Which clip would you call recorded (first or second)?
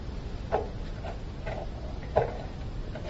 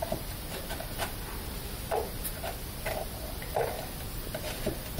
first